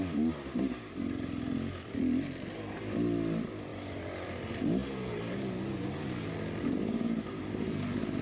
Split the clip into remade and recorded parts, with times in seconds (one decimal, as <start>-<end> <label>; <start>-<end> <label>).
0.0-8.2 recorded

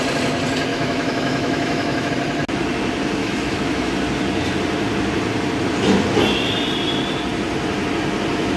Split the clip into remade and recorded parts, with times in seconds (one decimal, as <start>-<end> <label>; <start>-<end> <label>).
0.0-0.7 recorded; 0.7-2.1 remade; 2.1-3.2 recorded; 3.2-3.9 remade; 3.9-8.6 recorded

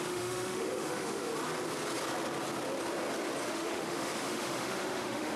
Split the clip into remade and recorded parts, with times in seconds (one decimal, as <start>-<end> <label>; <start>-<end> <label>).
0.0-1.3 remade; 1.3-3.5 recorded; 3.5-5.4 remade

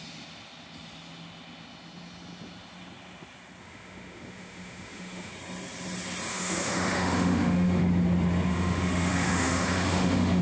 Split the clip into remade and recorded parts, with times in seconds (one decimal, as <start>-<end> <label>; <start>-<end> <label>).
0.0-3.6 recorded; 3.6-5.3 remade; 5.3-6.3 recorded; 6.3-7.8 remade; 7.8-8.5 recorded; 8.5-10.4 remade